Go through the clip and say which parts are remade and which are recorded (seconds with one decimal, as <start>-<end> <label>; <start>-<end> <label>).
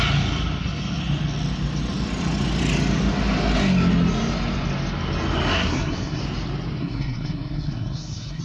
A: 0.0-5.5 recorded; 5.5-6.2 remade; 6.2-6.8 recorded; 6.8-8.4 remade